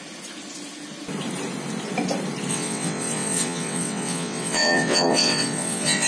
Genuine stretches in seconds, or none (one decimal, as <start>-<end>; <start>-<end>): 0.0-2.5